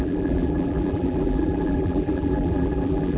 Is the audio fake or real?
fake